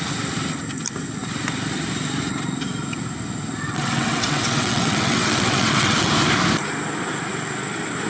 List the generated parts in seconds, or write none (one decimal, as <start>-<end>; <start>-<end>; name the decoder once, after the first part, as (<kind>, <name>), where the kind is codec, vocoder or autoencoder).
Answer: 3.7-6.1 (vocoder, WaveNeXt)